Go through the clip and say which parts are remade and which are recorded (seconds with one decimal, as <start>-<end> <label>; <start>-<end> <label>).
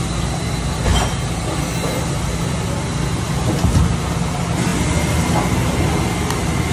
0.0-4.7 recorded; 4.7-5.4 remade; 5.4-6.7 recorded